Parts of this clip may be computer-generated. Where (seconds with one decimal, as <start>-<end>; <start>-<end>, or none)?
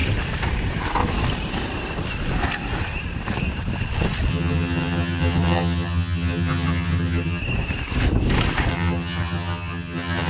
4.3-7.4; 8.7-10.3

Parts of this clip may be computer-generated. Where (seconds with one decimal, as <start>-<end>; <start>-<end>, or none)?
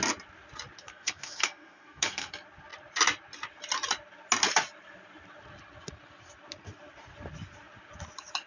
0.8-2.3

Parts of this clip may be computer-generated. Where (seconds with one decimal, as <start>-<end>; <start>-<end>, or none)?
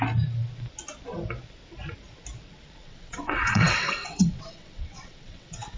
2.8-5.8